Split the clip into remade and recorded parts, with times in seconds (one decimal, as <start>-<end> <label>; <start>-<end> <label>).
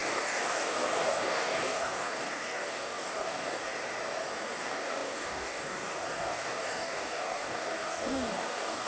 0.0-3.7 remade; 3.7-4.6 recorded; 4.6-8.9 remade